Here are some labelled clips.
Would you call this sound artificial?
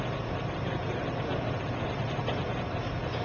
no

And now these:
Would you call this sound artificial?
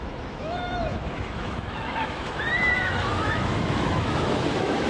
yes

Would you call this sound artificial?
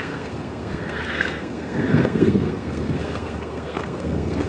yes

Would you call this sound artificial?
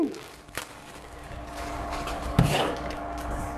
yes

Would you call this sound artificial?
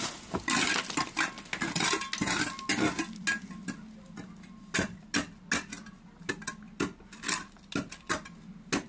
no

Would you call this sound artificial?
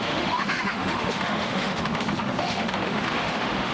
yes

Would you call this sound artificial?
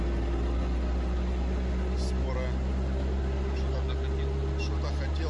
no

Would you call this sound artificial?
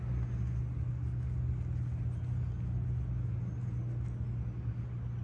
no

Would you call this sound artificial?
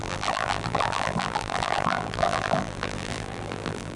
yes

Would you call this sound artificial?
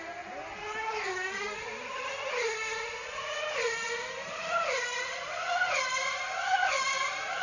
no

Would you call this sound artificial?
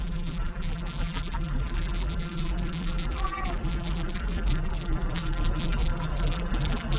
yes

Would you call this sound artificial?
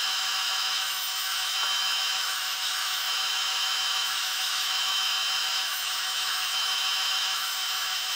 yes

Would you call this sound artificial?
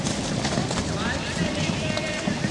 no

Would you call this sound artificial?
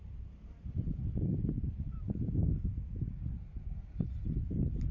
no